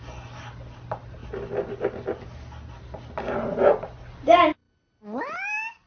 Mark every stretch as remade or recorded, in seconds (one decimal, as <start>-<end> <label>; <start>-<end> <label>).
0.0-5.9 recorded